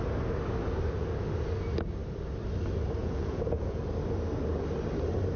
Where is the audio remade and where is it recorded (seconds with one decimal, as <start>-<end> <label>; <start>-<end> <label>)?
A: 0.0-3.0 recorded; 3.0-3.9 remade; 3.9-5.4 recorded